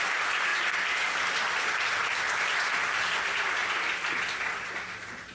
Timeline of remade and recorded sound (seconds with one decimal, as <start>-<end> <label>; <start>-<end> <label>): 0.0-0.5 remade; 0.5-3.1 recorded; 3.1-3.6 remade; 3.6-5.3 recorded